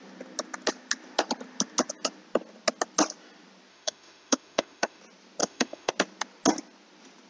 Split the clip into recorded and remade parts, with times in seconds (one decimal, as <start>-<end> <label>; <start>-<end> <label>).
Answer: 0.0-3.7 recorded; 3.7-5.0 remade; 5.0-5.4 recorded; 5.4-5.9 remade; 5.9-7.3 recorded